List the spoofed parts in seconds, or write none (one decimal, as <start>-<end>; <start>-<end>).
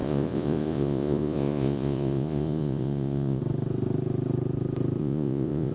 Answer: 0.0-3.4; 5.0-5.7